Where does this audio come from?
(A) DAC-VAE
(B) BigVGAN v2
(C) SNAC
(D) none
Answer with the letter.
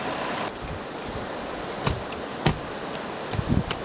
D